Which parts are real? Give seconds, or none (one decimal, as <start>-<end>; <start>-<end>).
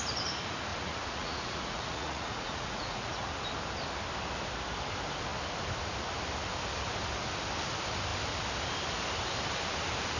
0.0-0.7; 3.3-10.2